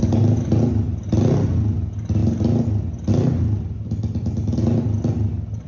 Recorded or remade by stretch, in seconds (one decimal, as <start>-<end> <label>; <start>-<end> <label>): 0.0-5.7 recorded